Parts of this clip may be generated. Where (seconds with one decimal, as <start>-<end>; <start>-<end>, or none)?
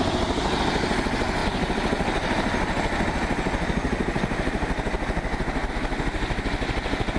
none